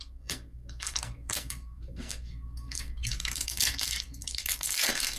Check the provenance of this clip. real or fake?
fake